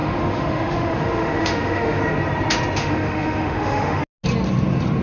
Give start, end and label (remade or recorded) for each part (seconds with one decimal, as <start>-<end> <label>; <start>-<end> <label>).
0.0-2.0 remade; 2.0-2.8 recorded; 2.8-4.0 remade; 4.0-5.0 recorded